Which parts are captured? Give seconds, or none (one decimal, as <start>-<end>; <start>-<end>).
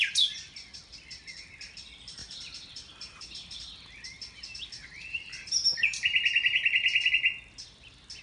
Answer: 0.0-2.2; 7.1-8.2